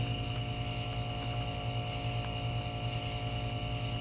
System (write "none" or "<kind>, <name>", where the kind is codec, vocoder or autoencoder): none